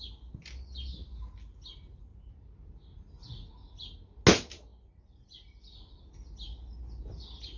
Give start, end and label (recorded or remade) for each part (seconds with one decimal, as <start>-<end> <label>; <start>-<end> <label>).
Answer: 0.0-7.6 recorded